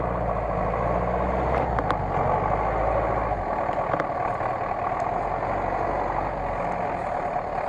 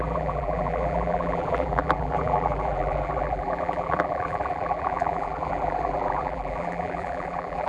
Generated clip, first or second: second